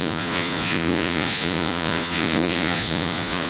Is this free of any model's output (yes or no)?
no